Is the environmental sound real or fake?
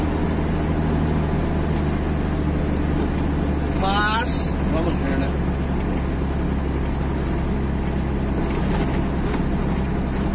real